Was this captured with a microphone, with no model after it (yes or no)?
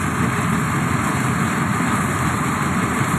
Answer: yes